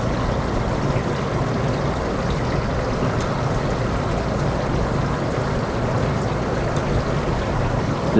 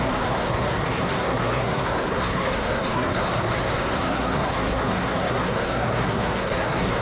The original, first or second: first